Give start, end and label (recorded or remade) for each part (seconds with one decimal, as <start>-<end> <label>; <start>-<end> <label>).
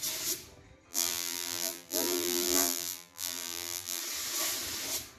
0.0-0.9 recorded; 0.9-4.0 remade; 4.0-5.2 recorded